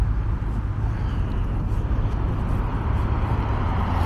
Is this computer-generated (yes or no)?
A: no